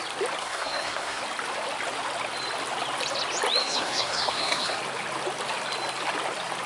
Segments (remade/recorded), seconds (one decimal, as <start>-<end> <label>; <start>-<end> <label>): 0.0-0.4 recorded; 0.4-1.2 remade; 1.2-3.6 recorded; 3.6-4.8 remade; 4.8-6.7 recorded